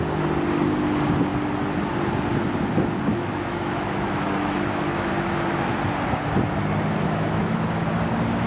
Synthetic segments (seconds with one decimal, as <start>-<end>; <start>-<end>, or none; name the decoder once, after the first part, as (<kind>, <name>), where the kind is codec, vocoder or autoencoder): 3.1-5.1 (autoencoder, DAC-VAE)